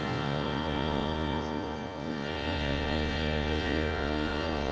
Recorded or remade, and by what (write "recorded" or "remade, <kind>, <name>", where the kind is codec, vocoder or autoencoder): remade, vocoder, Vocos